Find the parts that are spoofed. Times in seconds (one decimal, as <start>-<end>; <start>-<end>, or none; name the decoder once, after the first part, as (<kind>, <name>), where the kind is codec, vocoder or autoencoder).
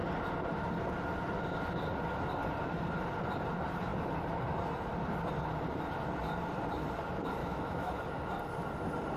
7.4-7.9 (autoencoder, DAC-VAE)